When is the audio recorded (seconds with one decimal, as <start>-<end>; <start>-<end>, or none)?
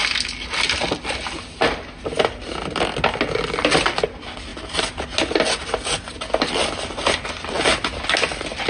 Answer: 0.0-8.7